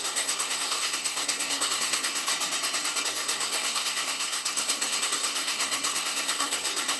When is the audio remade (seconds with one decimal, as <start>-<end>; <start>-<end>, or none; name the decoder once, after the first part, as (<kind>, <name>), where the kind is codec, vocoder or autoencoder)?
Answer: 0.0-2.3 (codec, SNAC); 3.0-7.0